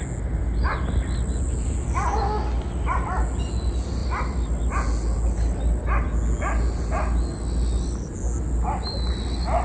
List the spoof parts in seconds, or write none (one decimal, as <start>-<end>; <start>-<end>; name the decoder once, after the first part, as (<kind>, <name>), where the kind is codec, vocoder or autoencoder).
none